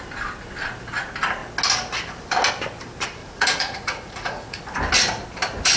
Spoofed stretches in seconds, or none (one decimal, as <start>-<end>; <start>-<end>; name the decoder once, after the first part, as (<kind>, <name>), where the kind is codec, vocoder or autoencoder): 3.2-4.6 (vocoder, Vocos)